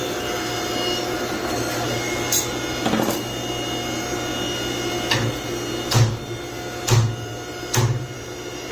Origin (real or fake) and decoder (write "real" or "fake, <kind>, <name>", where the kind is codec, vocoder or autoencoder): real